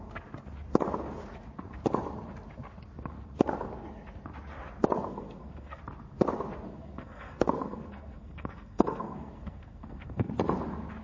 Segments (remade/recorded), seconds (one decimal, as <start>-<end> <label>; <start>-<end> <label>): 0.0-5.1 recorded; 5.1-5.8 remade; 5.8-6.7 recorded; 6.7-10.3 remade; 10.3-11.0 recorded